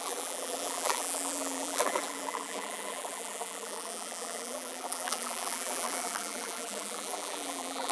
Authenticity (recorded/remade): remade